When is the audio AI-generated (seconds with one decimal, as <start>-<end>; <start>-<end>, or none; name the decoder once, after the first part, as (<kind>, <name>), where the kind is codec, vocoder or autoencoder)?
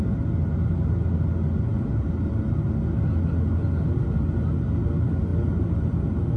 none